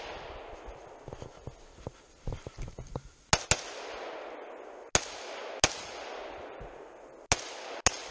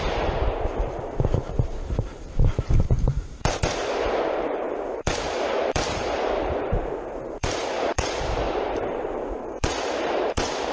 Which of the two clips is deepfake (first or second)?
second